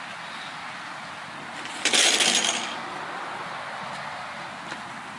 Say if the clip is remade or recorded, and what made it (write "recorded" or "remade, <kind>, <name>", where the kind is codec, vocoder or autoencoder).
recorded